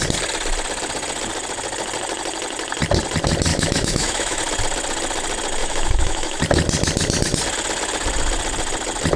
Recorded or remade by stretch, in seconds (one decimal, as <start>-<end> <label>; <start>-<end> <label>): 0.0-3.5 recorded; 3.5-4.4 remade; 4.4-5.6 recorded; 5.6-6.4 remade; 6.4-9.2 recorded